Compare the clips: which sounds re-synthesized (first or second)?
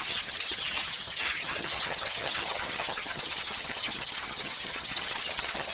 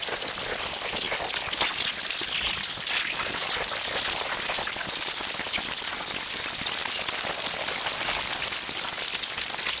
first